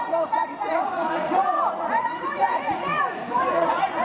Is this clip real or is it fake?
fake